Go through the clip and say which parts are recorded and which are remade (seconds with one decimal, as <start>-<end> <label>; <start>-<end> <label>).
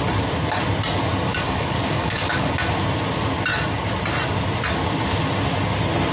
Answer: 0.0-1.3 recorded; 1.3-2.5 remade; 2.5-6.1 recorded